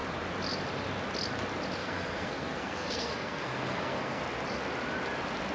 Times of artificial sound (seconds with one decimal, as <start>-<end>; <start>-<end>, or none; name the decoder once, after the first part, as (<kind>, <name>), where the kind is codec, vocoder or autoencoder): 1.8-4.2 (codec, SNAC)